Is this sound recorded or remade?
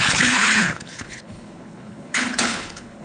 remade